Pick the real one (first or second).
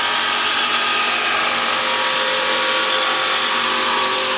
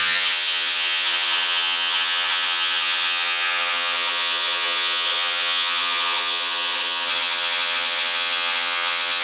first